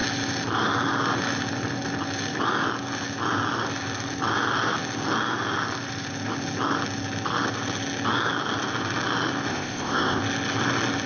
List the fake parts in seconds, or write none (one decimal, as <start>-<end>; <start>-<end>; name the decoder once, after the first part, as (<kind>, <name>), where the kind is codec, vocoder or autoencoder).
9.5-10.2 (codec, ZipCodec)